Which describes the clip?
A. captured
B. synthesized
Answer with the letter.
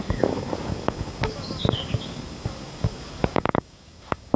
B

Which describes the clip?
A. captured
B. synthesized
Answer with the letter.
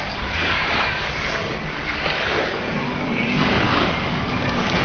B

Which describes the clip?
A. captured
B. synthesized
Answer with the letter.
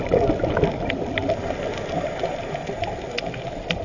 A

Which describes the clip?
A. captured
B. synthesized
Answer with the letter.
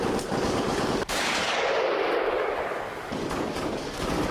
B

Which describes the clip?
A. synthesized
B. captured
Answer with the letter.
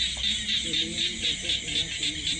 B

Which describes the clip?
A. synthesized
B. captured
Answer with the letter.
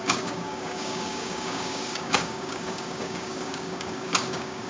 A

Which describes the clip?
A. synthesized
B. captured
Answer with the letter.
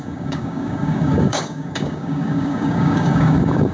A